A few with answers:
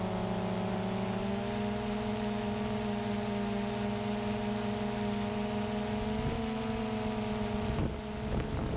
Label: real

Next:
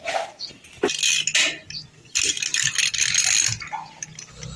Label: real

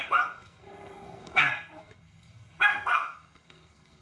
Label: fake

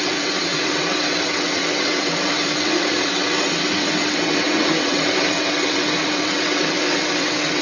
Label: fake